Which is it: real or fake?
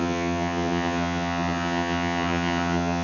fake